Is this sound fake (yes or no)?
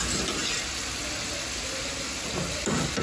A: no